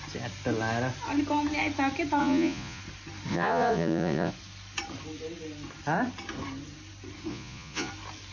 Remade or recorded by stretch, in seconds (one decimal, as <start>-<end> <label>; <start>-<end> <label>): 0.0-2.2 recorded; 2.2-2.8 remade; 2.8-3.3 recorded; 3.3-4.3 remade; 4.3-7.3 recorded; 7.3-7.9 remade; 7.9-8.3 recorded